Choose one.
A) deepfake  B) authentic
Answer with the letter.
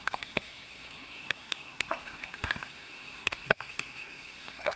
A